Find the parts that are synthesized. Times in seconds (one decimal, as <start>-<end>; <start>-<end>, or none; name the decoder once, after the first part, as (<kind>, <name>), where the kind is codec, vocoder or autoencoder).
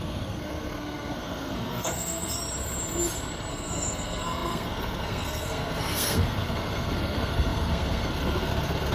0.0-2.4 (codec, SNAC); 3.5-8.9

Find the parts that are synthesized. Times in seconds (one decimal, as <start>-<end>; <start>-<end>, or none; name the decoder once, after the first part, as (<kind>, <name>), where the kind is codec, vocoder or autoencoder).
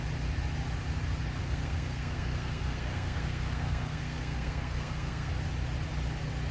1.4-5.3 (codec, SNAC)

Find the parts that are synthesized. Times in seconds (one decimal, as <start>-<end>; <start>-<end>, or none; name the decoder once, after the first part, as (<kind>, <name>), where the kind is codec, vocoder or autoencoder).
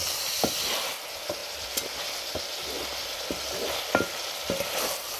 none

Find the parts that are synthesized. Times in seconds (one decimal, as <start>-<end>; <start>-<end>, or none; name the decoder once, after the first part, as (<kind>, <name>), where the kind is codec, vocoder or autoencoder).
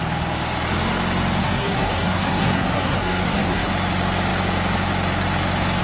1.4-3.7 (codec, SNAC)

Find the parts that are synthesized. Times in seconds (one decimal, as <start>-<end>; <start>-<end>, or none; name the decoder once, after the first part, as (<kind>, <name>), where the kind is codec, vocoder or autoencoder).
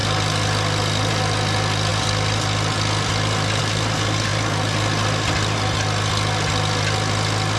none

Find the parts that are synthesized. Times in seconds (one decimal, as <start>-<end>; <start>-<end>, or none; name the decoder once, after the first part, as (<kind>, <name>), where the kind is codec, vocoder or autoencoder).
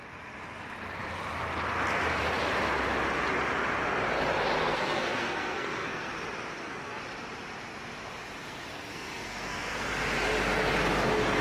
4.6-6.1 (codec, SNAC); 6.5-7.0; 8.4-9.9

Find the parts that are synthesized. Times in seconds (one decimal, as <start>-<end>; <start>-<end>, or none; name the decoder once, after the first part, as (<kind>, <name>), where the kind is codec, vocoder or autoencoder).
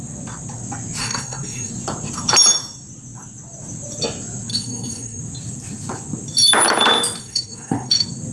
1.0-1.7 (codec, SNAC); 4.5-5.2; 7.2-7.9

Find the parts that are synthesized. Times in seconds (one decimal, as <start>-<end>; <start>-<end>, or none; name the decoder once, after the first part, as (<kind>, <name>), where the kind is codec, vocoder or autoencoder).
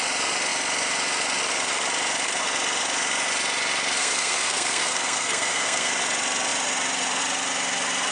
4.0-5.9 (codec, SNAC)